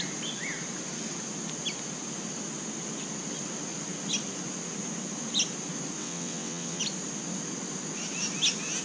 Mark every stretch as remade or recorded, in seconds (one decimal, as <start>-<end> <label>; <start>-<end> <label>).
0.0-6.0 recorded; 6.0-6.8 remade; 6.8-8.8 recorded